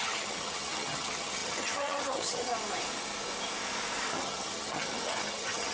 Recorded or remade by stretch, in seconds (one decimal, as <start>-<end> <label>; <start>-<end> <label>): 0.0-2.5 remade; 2.5-4.1 recorded; 4.1-5.7 remade